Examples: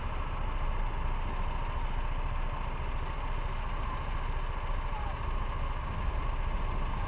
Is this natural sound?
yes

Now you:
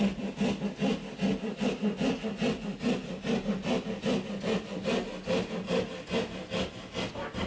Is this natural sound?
yes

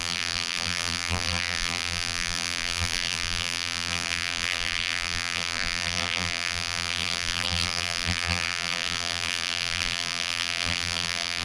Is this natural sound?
no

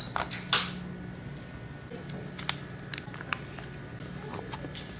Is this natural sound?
yes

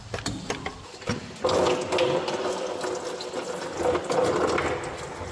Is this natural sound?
yes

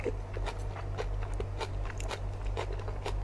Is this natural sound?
yes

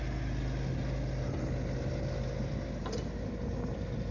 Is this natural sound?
yes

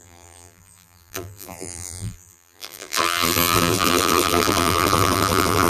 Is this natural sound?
no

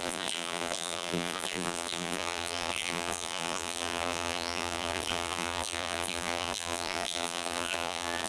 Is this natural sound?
no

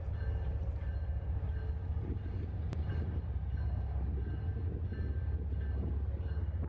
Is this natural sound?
yes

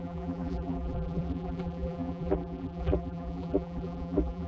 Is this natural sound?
no